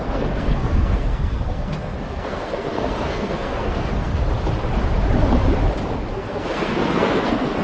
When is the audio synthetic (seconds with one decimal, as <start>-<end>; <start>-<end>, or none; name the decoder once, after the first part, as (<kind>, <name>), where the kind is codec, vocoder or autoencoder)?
0.0-4.1 (codec, SNAC); 6.1-7.6